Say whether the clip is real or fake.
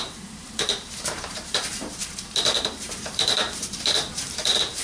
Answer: fake